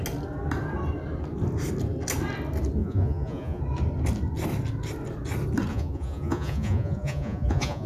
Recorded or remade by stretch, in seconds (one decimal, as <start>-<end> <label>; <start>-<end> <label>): 0.0-2.8 recorded; 2.8-3.6 remade; 3.6-5.7 recorded; 5.7-7.9 remade